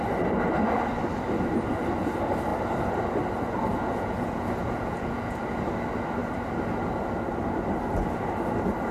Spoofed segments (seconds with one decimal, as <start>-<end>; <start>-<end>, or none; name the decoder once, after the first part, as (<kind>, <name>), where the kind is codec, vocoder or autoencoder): 3.7-5.4 (vocoder, Vocos)